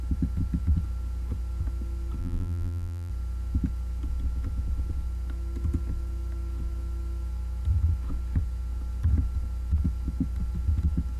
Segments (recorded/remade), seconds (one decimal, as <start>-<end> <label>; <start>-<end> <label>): 0.0-2.2 recorded; 2.2-3.1 remade; 3.1-11.2 recorded